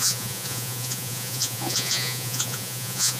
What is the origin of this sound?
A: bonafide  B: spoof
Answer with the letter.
B